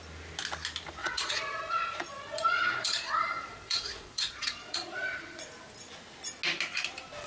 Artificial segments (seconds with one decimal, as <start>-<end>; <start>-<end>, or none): 1.0-5.4